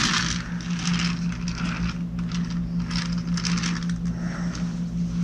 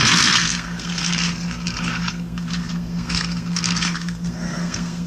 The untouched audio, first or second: first